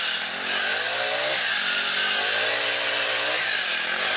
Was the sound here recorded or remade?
recorded